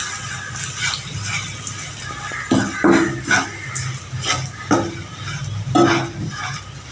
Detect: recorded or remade recorded